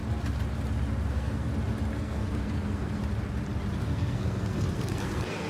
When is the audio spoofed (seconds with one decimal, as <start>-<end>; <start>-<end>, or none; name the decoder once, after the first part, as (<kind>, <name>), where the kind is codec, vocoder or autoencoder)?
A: 1.1-1.5 (codec, SNAC); 2.0-3.0; 3.7-5.5